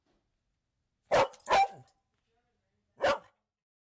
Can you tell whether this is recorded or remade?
recorded